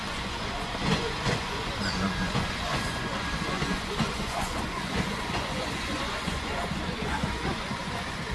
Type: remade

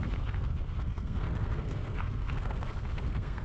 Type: remade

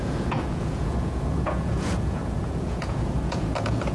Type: remade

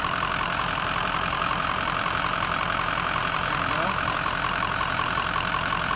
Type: remade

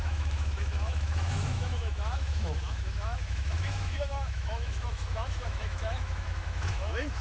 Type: remade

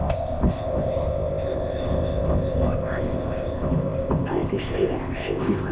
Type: remade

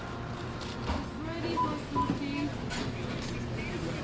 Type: recorded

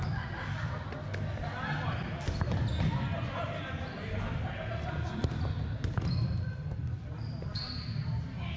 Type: recorded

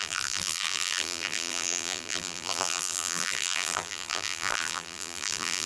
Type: remade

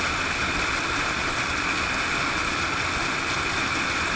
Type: recorded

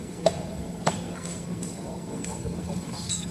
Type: remade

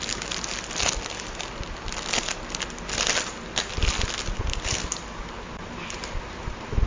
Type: recorded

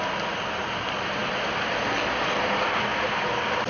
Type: recorded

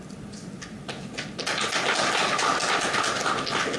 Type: recorded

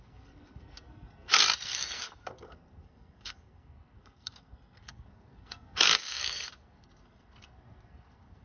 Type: remade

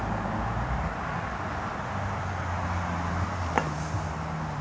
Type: recorded